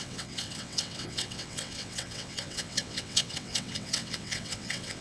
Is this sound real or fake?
fake